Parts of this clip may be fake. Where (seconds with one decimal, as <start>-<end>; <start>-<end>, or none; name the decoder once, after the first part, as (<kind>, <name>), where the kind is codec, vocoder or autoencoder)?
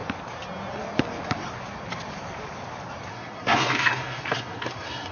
3.1-5.1 (codec, SNAC)